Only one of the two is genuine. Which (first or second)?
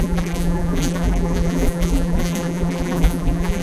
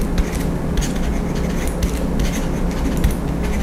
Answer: second